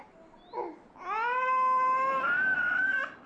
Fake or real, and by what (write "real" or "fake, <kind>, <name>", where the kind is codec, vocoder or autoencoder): real